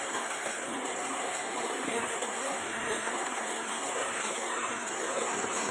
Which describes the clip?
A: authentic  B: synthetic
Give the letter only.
B